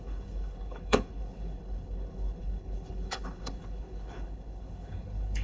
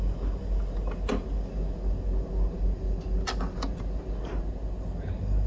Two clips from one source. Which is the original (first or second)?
second